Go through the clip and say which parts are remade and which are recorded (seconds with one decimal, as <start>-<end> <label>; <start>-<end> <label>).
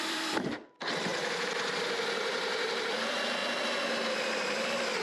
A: 0.0-3.4 remade; 3.4-4.1 recorded; 4.1-5.0 remade